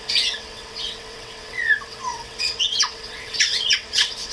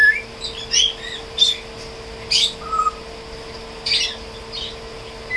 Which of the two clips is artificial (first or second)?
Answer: first